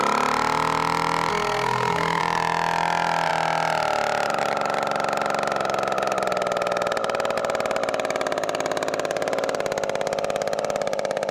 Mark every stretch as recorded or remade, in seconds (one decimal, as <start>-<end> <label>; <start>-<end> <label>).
0.0-1.3 recorded; 1.3-2.2 remade; 2.2-11.3 recorded